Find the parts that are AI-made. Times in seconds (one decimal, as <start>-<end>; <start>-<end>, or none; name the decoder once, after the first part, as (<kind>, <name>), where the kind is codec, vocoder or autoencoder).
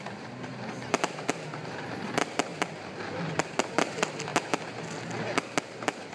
0.0-0.5 (vocoder, BigVGAN v2); 1.3-4.3; 5.0-6.1